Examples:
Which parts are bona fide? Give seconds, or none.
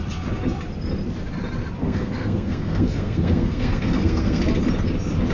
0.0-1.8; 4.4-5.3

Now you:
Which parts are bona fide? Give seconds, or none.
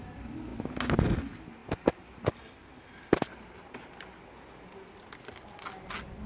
0.0-6.3